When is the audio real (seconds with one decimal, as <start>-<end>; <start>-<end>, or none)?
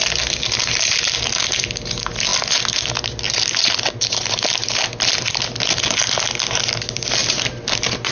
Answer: 0.0-7.2